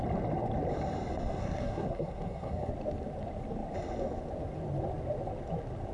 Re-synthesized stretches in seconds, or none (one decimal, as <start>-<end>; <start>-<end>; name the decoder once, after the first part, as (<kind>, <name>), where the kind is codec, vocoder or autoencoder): 1.4-2.7 (codec, SNAC)